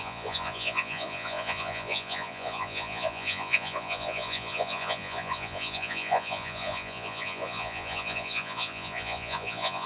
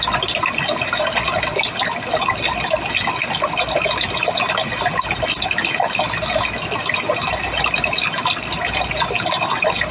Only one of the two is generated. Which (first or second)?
first